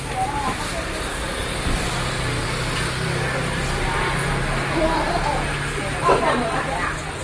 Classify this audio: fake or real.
real